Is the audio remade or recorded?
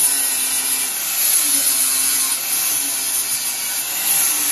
recorded